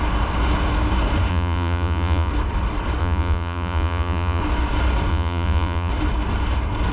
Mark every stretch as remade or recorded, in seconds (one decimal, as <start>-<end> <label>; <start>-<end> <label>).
0.0-1.3 recorded; 1.3-2.3 remade; 2.3-3.0 recorded; 3.0-4.4 remade; 4.4-5.1 recorded; 5.1-5.9 remade; 5.9-6.9 recorded

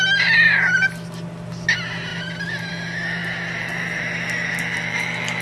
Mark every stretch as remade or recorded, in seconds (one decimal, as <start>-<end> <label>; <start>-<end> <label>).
0.0-5.4 recorded